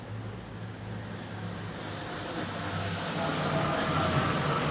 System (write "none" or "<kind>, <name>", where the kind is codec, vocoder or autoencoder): none